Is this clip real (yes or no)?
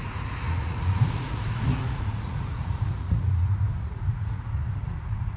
no